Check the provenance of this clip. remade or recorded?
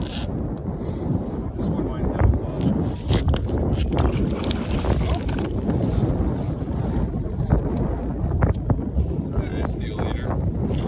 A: recorded